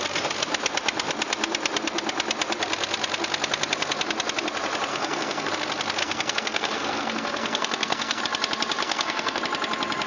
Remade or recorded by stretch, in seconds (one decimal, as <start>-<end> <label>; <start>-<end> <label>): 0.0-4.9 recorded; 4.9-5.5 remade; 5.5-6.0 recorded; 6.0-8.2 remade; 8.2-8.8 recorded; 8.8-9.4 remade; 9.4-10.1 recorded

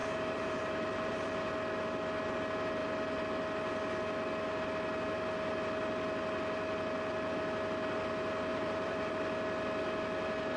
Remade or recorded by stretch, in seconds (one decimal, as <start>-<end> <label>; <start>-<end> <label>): 0.0-1.5 remade; 1.5-8.5 recorded; 8.5-9.1 remade; 9.1-10.6 recorded

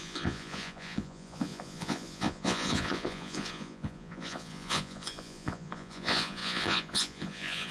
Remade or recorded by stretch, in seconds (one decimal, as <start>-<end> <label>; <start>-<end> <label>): 0.0-7.7 remade

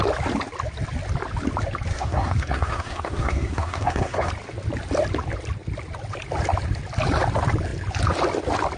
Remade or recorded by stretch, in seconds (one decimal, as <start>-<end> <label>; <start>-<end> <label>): 0.0-1.9 recorded; 1.9-4.3 remade; 4.3-8.8 recorded